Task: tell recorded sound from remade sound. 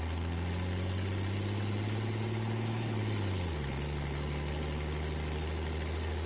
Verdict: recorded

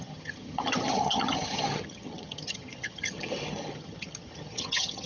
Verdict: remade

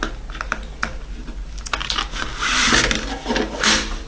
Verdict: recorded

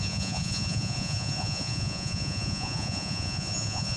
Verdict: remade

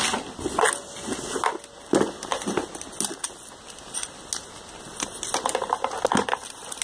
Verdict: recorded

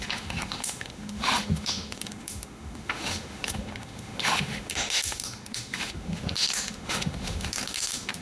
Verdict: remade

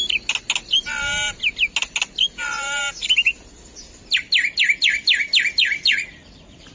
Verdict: recorded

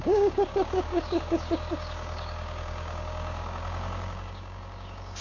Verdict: remade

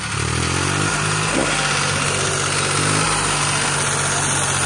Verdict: recorded